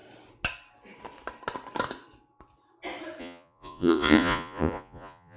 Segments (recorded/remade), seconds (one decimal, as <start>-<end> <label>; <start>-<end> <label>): 0.0-3.2 recorded; 3.2-5.4 remade